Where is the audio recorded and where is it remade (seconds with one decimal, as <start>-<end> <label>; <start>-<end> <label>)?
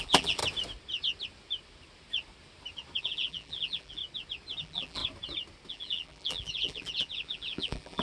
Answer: 0.0-0.4 remade; 0.4-3.0 recorded; 3.0-4.0 remade; 4.0-4.6 recorded; 4.6-5.0 remade; 5.0-5.7 recorded; 5.7-8.0 remade